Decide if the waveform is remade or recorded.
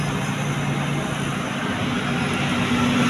recorded